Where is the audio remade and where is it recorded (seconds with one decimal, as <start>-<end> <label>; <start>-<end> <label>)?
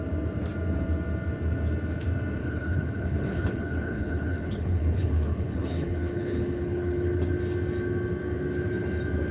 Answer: 0.0-2.4 recorded; 2.4-7.2 remade; 7.2-9.3 recorded